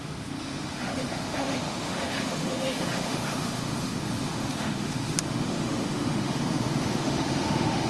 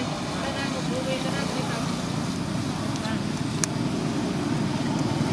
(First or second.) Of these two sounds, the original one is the second